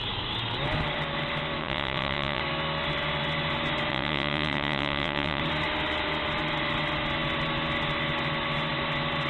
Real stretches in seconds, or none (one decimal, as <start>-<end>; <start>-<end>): 0.0-1.6; 2.4-3.9; 5.4-9.3